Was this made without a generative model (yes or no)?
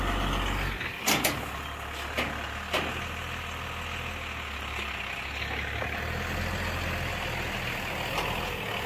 yes